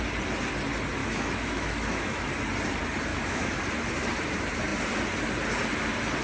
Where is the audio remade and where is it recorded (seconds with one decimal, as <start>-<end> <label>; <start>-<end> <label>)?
0.0-1.0 recorded; 1.0-2.3 remade; 2.3-3.1 recorded; 3.1-3.6 remade; 3.6-6.2 recorded